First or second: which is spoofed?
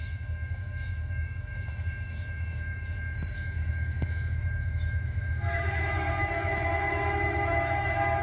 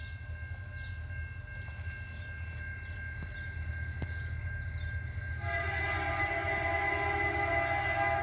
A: first